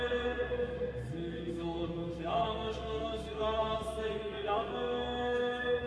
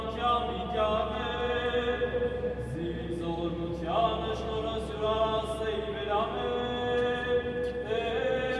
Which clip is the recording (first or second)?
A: second